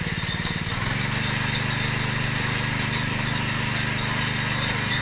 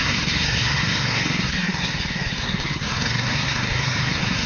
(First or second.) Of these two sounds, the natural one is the first